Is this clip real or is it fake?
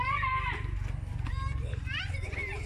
real